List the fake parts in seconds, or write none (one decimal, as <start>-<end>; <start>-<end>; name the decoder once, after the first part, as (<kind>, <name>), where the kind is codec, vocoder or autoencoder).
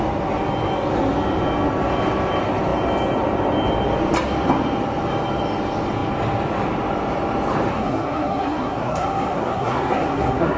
7.7-10.6 (codec, SNAC)